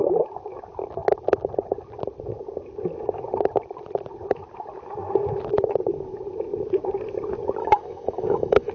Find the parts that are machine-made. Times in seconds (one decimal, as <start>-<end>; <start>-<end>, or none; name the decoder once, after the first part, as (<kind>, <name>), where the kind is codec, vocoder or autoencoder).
7.6-8.7 (autoencoder, DAC-VAE)